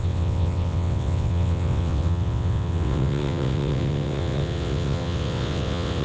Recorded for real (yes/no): no